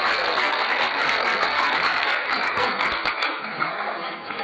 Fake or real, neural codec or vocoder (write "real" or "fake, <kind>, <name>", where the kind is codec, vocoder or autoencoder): fake, codec, SNAC